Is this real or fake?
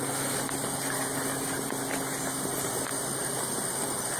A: real